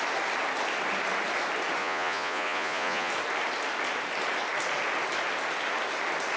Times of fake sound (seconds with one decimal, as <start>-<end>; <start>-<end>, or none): 1.8-3.1